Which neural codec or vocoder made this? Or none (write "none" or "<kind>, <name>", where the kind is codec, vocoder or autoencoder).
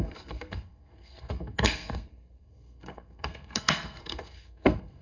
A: codec, SNAC